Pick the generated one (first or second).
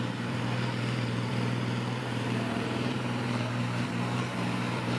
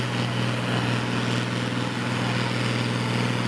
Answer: first